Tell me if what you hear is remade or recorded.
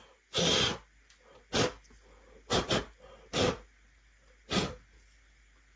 recorded